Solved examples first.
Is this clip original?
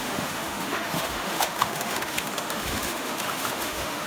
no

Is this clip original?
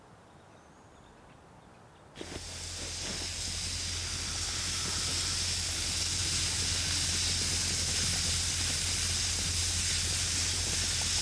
yes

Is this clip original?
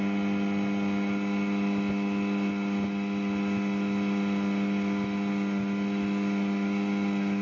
yes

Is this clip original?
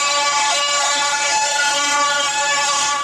no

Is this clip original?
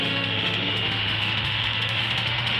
no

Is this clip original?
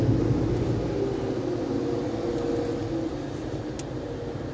yes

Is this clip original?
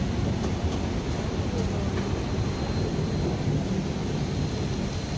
yes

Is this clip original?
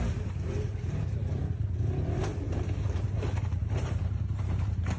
yes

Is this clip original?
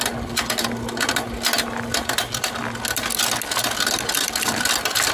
yes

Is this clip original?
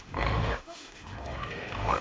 no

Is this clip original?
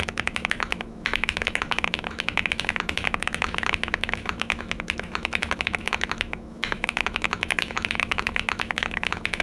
no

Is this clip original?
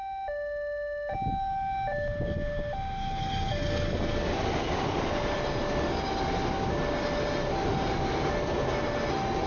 yes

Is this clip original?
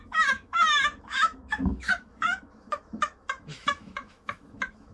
no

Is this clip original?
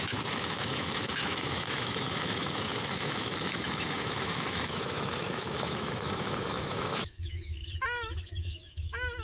no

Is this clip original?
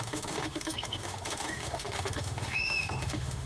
no